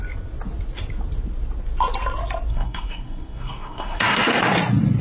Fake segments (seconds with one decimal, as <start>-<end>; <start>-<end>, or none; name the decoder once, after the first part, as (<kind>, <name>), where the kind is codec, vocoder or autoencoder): 2.5-4.4 (codec, SNAC)